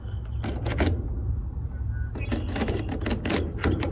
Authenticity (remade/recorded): recorded